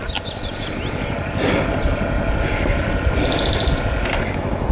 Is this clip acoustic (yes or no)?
yes